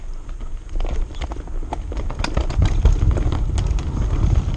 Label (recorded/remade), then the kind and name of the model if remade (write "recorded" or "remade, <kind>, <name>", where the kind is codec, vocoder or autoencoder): recorded